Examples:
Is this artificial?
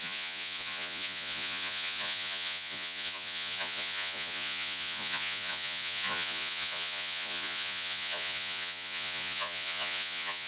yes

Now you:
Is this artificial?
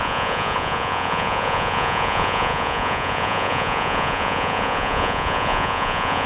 yes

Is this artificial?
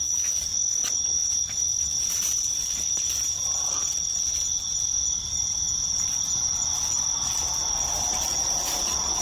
no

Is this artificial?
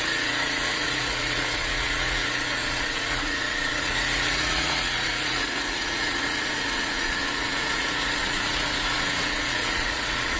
yes